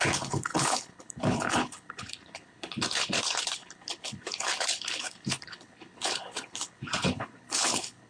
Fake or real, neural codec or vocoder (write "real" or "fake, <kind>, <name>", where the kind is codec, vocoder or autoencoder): fake, codec, HILCodec